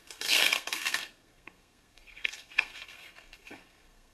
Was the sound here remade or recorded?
remade